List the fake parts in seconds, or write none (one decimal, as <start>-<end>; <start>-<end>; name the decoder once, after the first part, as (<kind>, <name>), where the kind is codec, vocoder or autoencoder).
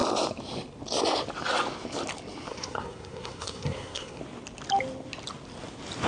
2.5-4.2 (codec, SNAC)